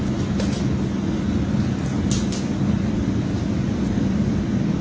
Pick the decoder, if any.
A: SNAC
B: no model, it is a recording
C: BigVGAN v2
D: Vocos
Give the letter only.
B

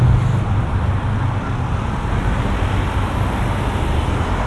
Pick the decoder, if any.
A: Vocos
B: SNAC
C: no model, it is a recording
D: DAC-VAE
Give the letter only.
C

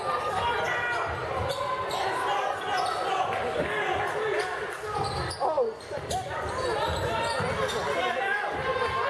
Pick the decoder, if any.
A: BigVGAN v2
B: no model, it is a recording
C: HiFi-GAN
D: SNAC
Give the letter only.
B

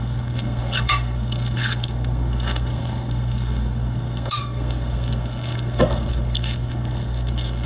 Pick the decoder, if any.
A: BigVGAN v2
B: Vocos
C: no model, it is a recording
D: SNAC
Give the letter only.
D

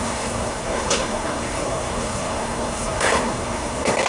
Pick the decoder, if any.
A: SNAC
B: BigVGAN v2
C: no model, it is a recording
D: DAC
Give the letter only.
A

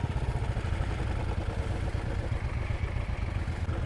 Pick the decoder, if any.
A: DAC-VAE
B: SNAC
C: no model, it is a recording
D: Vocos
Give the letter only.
C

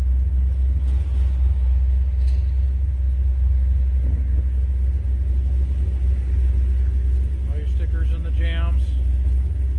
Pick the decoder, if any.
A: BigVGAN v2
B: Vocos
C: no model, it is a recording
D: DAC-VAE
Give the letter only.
C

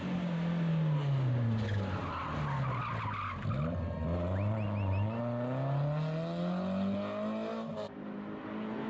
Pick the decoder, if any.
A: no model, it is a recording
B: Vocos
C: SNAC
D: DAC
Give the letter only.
A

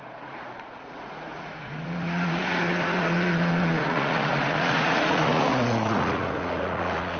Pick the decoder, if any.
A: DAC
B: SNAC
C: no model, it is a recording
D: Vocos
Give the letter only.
D